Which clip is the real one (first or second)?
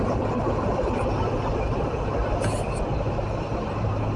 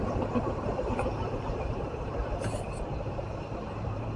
first